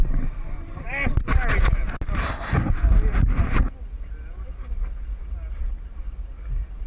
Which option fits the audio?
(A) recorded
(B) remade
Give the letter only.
A